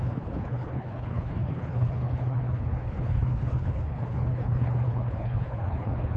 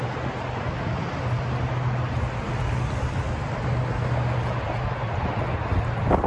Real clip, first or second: second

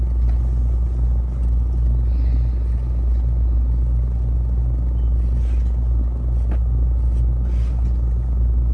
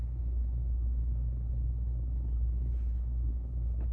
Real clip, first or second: first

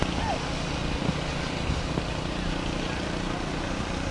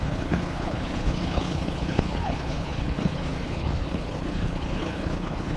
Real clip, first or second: first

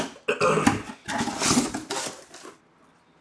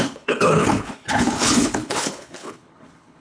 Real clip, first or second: first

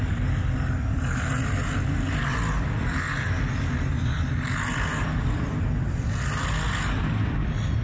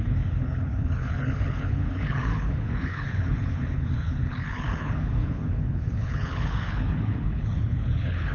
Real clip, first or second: first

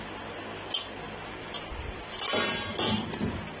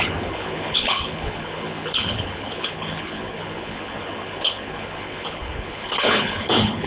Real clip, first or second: first